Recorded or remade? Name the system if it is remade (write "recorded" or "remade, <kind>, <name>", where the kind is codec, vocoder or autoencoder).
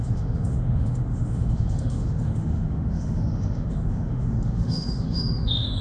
remade, autoencoder, DAC-VAE